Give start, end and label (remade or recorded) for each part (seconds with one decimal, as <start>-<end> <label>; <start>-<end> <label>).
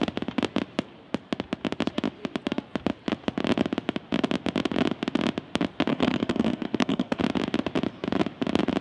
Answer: 0.0-5.9 recorded; 5.9-7.2 remade; 7.2-8.8 recorded